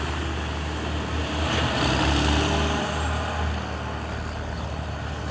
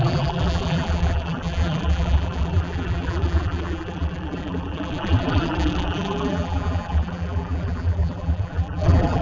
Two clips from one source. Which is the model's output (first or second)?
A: second